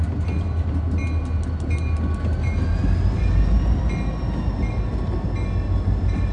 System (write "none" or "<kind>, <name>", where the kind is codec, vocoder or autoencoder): none